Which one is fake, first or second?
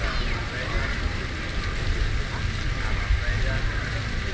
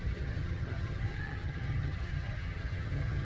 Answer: second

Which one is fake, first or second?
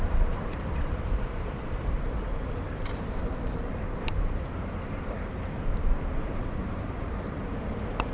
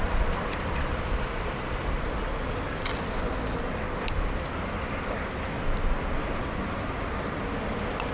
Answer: first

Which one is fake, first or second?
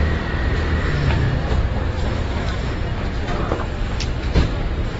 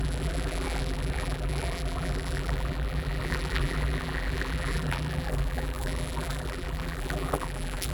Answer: second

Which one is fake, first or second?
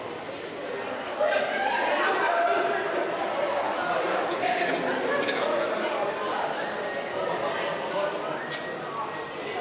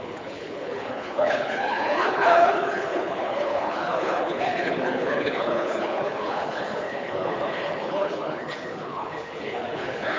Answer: second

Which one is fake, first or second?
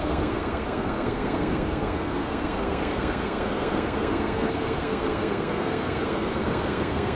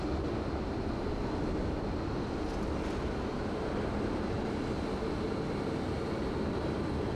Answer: first